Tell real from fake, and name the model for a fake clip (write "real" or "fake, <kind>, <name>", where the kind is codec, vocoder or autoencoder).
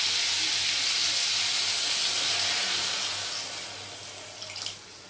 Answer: real